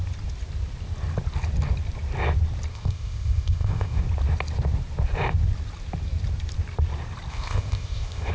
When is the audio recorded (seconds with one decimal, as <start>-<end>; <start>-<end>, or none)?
0.0-2.7; 4.0-7.3

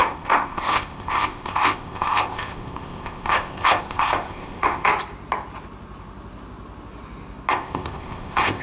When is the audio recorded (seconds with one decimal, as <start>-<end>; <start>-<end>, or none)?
4.9-7.5

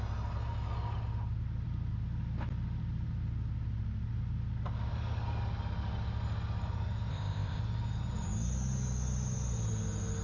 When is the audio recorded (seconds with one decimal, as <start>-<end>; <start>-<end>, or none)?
0.0-7.1; 7.6-10.2

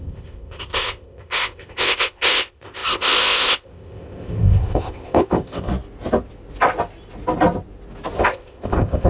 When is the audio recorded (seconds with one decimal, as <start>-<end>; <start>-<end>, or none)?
5.7-8.2

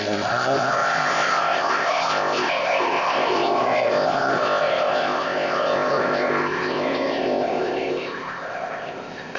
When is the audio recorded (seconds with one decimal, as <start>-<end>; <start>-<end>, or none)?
none